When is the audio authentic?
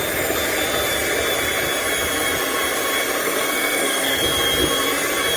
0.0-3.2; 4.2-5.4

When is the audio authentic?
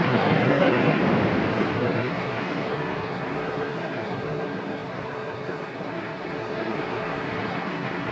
1.0-1.5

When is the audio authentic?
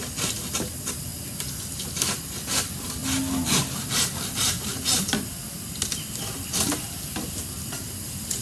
0.0-8.4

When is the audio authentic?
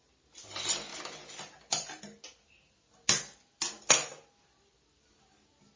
0.0-5.8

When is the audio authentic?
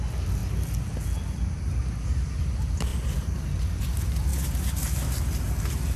0.0-6.0